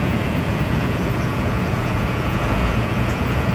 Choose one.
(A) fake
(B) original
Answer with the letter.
A